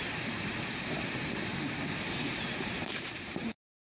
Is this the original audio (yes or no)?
no